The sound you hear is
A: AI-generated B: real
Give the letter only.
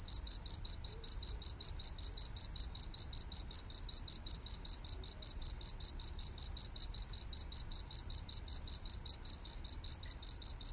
A